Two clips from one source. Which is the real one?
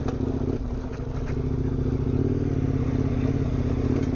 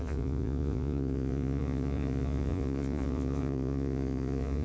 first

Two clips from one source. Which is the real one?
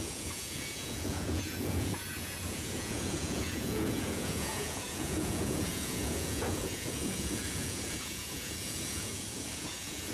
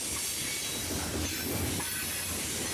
second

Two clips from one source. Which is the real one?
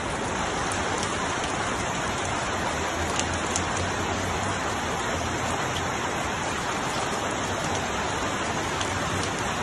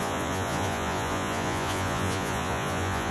first